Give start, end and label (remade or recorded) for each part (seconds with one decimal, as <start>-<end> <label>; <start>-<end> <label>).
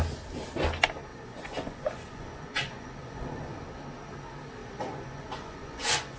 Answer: 0.0-1.1 recorded; 1.1-3.6 remade; 3.6-4.6 recorded; 4.6-6.2 remade